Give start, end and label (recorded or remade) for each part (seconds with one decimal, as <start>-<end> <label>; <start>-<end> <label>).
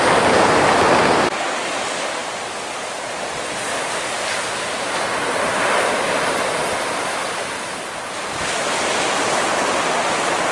0.0-10.5 recorded